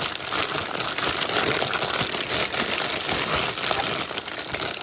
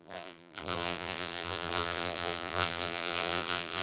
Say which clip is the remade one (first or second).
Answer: second